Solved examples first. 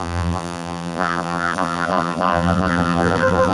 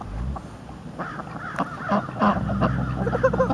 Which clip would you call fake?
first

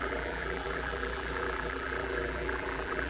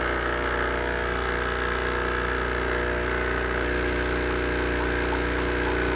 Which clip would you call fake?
first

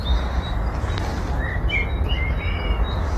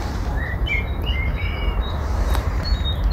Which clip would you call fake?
second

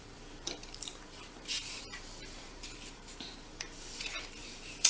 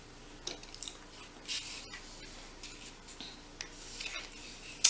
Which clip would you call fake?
first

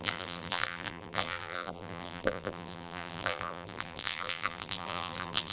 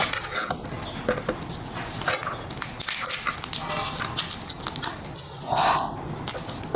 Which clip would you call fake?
first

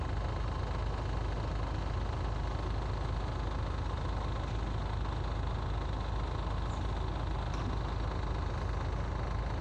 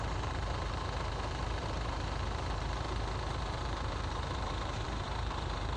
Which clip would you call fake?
second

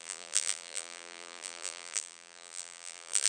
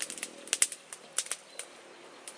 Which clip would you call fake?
first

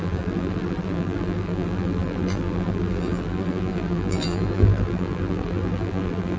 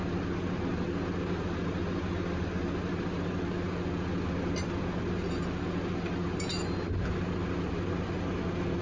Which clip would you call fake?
first